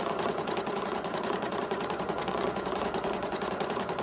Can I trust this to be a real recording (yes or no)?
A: no